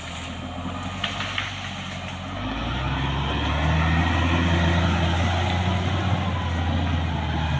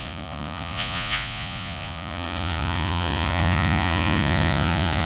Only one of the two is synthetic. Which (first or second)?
second